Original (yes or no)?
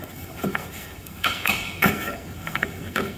no